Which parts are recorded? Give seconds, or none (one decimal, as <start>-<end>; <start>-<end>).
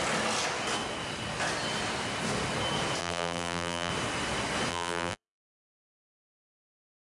0.0-3.0; 3.9-4.7; 5.7-7.2